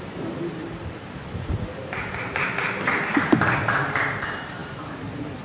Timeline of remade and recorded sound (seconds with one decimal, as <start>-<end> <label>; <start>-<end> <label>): 0.0-5.4 remade